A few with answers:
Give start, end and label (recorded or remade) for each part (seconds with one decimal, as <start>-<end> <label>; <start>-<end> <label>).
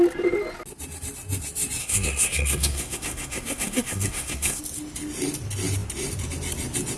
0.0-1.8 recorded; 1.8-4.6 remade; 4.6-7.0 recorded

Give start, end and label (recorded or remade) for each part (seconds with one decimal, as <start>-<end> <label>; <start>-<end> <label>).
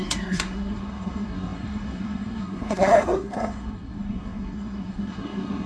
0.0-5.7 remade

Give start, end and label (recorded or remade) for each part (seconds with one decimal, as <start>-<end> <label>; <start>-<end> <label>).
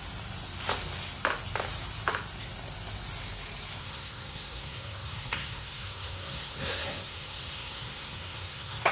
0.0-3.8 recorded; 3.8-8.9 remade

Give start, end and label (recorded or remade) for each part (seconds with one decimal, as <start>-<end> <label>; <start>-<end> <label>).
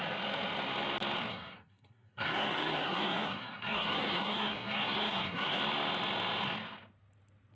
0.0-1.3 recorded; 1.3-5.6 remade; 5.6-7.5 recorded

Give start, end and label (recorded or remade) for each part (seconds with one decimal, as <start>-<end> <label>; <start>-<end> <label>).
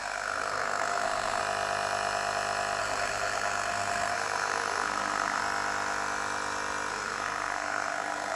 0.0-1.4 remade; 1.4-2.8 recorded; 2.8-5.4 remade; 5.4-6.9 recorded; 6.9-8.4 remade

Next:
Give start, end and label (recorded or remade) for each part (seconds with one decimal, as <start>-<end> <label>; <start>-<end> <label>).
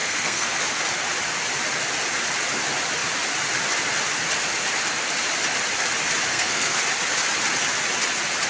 0.0-0.6 remade; 0.6-6.3 recorded; 6.3-6.8 remade; 6.8-8.5 recorded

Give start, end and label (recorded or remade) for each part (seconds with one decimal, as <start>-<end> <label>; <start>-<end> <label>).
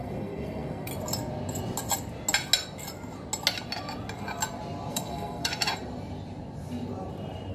0.0-0.9 remade; 0.9-4.9 recorded; 4.9-5.5 remade; 5.5-7.5 recorded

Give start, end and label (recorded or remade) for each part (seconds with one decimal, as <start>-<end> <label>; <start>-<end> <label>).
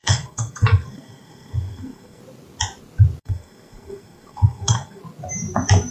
0.0-2.2 remade; 2.2-3.2 recorded; 3.2-5.0 remade; 5.0-5.9 recorded